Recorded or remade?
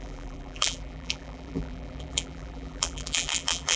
remade